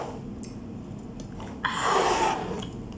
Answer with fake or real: real